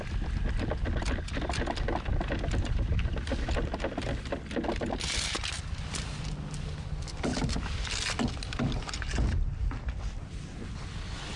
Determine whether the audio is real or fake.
real